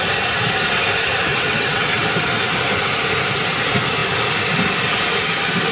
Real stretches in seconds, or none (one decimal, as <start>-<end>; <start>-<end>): 0.0-1.3; 2.0-5.7